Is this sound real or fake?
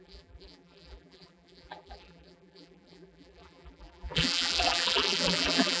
fake